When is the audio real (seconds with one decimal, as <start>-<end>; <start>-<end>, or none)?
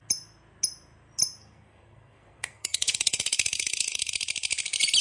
0.0-1.4; 4.1-5.0